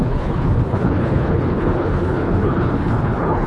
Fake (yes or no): yes